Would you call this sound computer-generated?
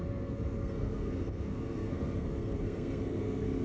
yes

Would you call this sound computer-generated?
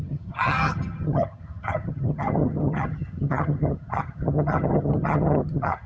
yes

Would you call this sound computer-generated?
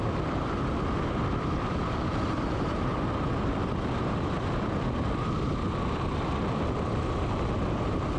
yes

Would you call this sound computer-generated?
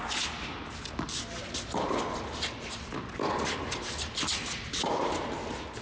no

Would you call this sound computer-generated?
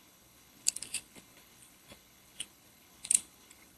yes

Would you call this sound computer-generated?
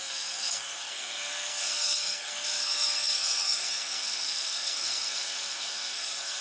yes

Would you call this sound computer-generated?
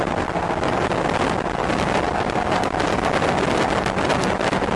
no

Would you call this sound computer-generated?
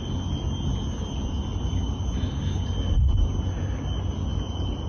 no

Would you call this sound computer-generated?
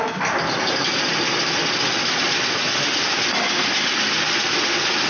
no